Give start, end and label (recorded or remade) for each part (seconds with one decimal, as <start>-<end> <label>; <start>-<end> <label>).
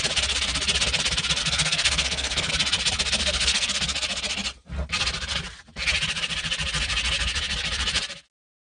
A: 0.0-1.4 recorded; 1.4-2.5 remade; 2.5-3.2 recorded; 3.2-3.7 remade; 3.7-8.8 recorded